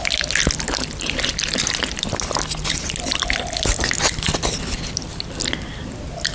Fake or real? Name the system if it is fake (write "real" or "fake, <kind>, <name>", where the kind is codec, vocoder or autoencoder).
real